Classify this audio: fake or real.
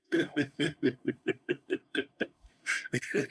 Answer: fake